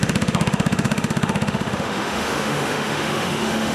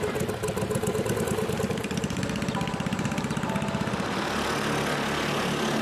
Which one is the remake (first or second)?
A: first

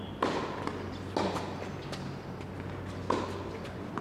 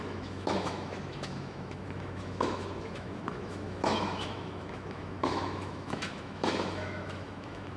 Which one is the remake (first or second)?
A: second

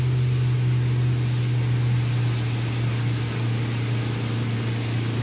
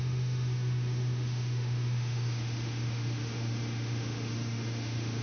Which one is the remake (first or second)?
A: second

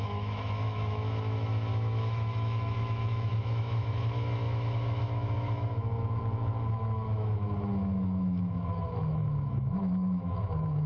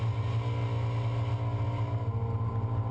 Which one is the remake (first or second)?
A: first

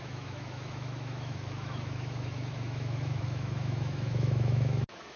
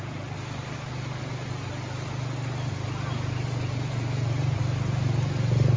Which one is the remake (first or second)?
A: first